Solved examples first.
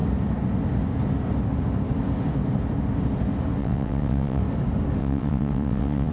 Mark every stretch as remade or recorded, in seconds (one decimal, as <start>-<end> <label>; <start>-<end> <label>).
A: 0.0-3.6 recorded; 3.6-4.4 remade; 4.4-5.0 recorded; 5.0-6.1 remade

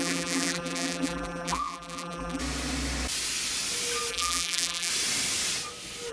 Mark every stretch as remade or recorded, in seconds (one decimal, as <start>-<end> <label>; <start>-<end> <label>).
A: 0.0-2.4 remade; 2.4-4.1 recorded; 4.1-4.9 remade; 4.9-6.1 recorded

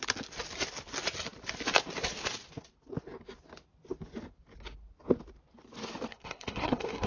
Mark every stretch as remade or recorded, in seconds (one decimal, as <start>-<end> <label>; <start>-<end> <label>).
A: 0.0-6.1 recorded; 6.1-7.1 remade

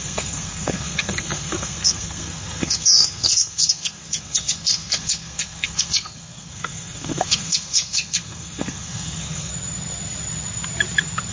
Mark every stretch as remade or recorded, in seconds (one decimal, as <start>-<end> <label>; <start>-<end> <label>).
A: 0.0-9.5 remade; 9.5-11.3 recorded